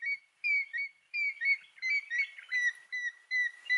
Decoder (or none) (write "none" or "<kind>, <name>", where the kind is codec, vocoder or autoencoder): none